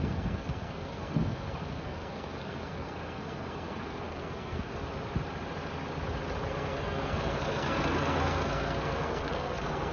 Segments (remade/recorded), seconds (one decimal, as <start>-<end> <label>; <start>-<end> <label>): 0.0-4.7 remade; 4.7-6.5 recorded; 6.5-9.9 remade